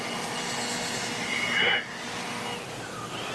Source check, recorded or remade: recorded